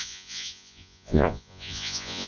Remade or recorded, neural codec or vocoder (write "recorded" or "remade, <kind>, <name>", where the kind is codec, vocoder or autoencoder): remade, vocoder, Vocos